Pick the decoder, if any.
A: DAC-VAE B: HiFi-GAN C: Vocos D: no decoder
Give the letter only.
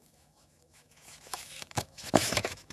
A